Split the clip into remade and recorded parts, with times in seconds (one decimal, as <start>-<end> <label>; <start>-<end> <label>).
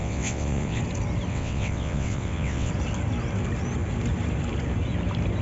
0.0-0.8 remade; 0.8-1.3 recorded; 1.3-2.7 remade; 2.7-5.4 recorded